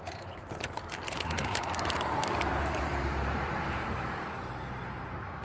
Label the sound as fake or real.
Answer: fake